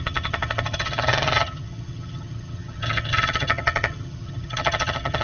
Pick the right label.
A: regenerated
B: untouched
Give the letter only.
A